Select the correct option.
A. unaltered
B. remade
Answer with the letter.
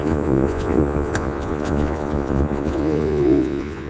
B